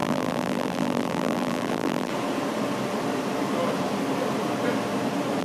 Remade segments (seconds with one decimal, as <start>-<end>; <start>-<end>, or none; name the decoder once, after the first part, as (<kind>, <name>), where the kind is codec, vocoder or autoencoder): 0.0-2.1 (vocoder, BigVGAN v2)